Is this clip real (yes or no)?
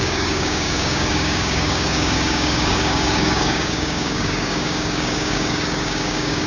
no